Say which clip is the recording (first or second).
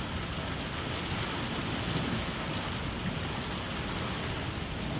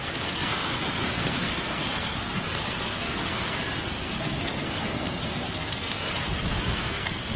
first